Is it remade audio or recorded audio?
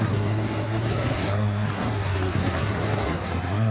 remade